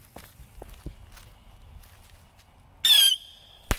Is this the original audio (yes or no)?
yes